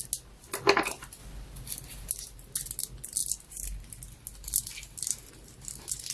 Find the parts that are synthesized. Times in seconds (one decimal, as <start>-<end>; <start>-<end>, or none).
1.2-2.1